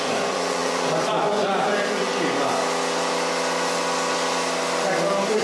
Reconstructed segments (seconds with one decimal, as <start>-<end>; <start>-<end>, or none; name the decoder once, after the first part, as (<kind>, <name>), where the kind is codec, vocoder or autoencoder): 0.0-2.1 (vocoder, Vocos)